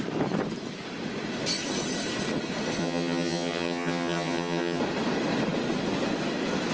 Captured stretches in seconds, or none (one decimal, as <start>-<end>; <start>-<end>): 0.0-2.8; 4.8-6.7